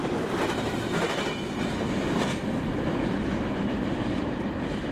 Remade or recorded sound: recorded